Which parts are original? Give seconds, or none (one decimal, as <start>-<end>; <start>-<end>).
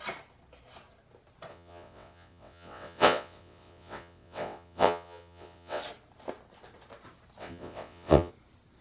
0.0-1.5; 5.8-7.4; 8.3-8.8